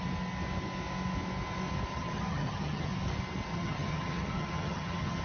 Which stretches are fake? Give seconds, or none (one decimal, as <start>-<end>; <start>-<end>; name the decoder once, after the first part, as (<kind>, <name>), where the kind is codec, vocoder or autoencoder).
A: 1.9-2.9 (vocoder, HiFi-GAN); 3.5-5.2